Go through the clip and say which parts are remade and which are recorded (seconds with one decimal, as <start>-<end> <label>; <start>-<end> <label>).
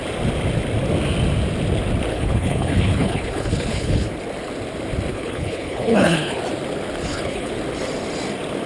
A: 0.0-2.1 recorded; 2.1-4.1 remade; 4.1-5.1 recorded; 5.1-6.4 remade; 6.4-7.0 recorded; 7.0-7.5 remade; 7.5-8.7 recorded